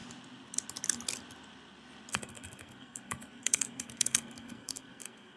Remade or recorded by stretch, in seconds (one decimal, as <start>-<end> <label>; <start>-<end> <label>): 0.0-2.1 recorded; 2.1-5.4 remade